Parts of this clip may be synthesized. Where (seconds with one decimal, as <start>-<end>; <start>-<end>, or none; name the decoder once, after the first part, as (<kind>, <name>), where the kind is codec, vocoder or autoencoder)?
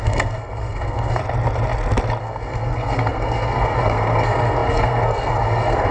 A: 0.0-1.2 (codec, SNAC); 2.2-5.9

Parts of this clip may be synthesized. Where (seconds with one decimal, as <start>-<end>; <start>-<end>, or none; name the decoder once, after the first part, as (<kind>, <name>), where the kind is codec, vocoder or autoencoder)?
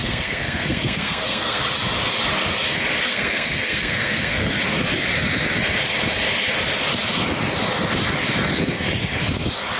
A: 0.0-1.6 (codec, SNAC); 3.1-4.5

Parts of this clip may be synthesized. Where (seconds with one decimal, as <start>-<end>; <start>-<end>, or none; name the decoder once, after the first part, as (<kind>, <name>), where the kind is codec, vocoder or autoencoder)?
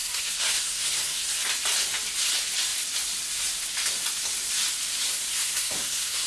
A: 0.0-1.4 (codec, SNAC); 5.3-6.3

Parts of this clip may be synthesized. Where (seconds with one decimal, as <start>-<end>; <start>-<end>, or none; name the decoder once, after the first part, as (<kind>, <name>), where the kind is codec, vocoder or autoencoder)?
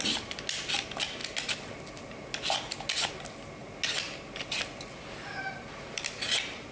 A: none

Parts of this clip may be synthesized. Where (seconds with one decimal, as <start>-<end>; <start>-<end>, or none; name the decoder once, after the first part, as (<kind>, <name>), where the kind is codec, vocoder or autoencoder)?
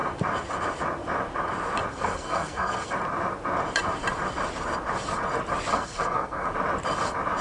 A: 1.9-2.9 (codec, SNAC); 5.7-6.5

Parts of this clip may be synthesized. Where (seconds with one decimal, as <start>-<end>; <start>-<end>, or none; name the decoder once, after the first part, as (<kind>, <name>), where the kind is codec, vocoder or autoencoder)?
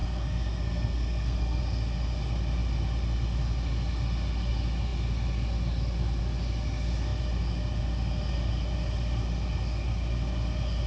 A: 0.0-1.6 (codec, SNAC)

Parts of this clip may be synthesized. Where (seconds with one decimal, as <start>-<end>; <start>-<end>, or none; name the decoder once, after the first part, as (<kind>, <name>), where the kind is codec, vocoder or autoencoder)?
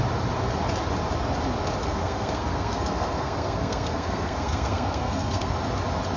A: 1.8-5.5 (codec, SNAC)